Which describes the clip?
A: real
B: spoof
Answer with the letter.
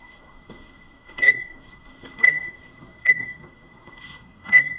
B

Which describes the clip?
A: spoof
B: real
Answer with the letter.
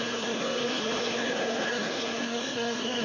A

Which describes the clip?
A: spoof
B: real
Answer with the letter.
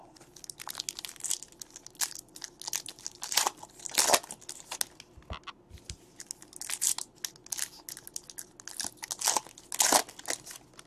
B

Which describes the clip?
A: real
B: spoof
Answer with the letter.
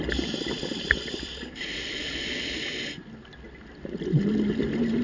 A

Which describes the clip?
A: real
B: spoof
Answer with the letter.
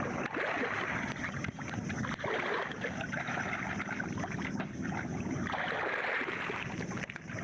A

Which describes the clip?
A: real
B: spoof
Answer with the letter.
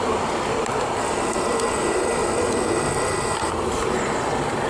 B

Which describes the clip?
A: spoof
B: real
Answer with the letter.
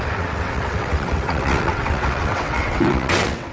A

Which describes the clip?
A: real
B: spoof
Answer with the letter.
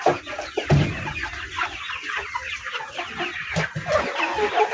A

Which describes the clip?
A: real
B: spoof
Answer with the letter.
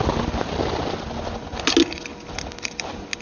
A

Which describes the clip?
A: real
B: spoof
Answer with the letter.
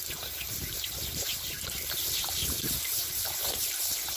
B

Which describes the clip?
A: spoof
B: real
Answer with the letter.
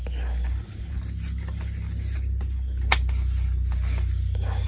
B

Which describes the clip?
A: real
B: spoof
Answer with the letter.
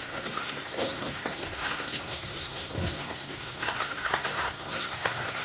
B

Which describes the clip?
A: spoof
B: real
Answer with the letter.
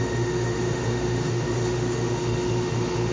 A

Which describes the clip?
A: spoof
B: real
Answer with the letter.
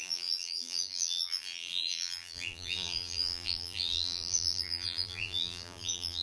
A